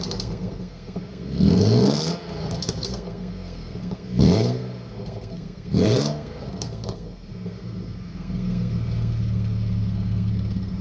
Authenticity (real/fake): fake